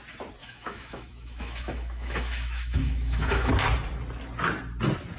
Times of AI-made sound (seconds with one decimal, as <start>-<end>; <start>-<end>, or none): 0.4-3.5